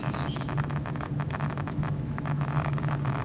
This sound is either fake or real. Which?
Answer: fake